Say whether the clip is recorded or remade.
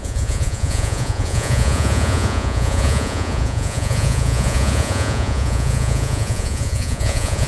remade